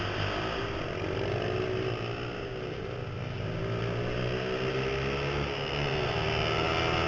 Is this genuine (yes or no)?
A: yes